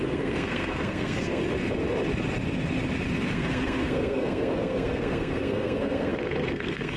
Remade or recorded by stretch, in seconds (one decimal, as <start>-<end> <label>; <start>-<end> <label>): 0.0-1.4 remade; 1.4-3.3 recorded; 3.3-7.0 remade